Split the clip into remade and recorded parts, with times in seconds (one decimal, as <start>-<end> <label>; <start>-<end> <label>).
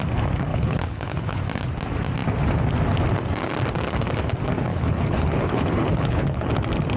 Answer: 0.0-0.5 recorded; 0.5-1.4 remade; 1.4-4.7 recorded; 4.7-6.5 remade; 6.5-7.0 recorded